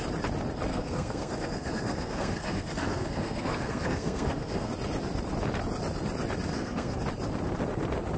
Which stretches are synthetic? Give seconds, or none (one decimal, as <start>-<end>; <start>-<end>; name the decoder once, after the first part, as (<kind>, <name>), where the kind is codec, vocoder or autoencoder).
0.7-4.7 (codec, SNAC); 6.5-7.0